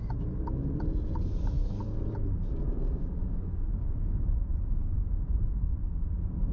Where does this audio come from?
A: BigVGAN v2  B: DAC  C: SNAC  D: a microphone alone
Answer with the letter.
A